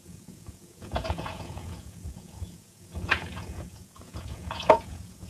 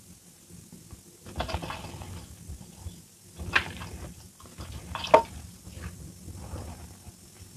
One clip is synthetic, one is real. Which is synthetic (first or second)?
first